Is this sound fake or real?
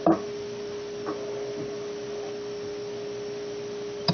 real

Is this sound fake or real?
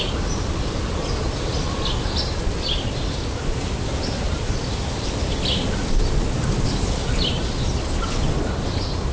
real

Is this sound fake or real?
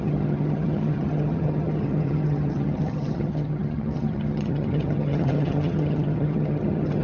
fake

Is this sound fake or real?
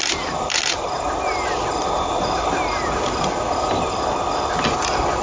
real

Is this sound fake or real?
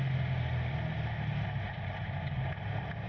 real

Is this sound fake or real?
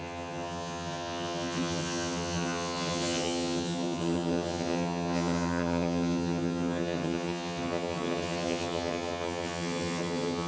fake